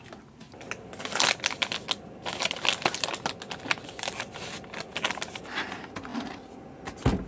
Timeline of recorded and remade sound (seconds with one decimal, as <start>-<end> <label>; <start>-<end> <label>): 0.0-7.3 recorded